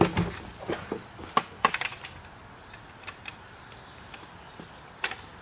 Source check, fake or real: real